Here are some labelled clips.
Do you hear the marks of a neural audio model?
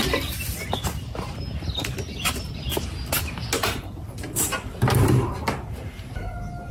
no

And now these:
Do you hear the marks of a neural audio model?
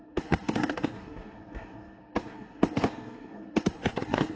yes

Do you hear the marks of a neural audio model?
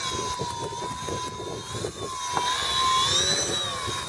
no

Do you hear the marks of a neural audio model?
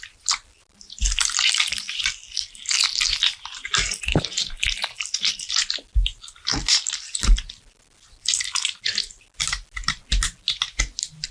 no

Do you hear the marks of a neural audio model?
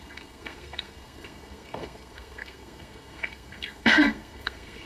yes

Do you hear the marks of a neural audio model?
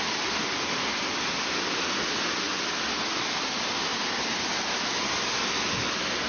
no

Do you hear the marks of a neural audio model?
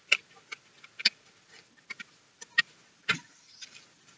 no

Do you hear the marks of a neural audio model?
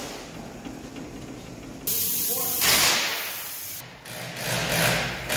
no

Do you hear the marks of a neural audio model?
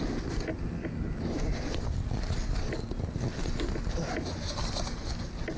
no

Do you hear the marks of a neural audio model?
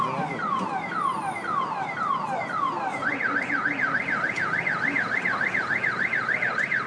no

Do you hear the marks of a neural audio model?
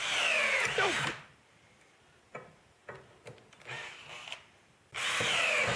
no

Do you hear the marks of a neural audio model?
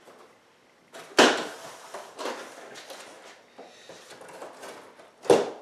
no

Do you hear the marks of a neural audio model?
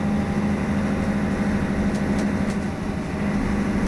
no